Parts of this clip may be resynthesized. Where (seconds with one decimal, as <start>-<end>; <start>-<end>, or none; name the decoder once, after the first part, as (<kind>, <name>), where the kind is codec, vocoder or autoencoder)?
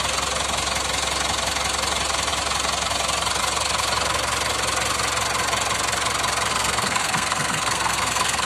6.5-8.5 (codec, SNAC)